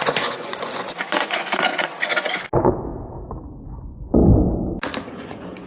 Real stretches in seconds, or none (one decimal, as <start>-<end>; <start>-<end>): 2.9-3.6; 4.2-5.1